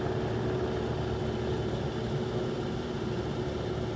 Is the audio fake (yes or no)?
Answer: no